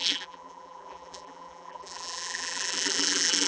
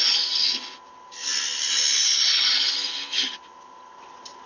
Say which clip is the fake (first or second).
first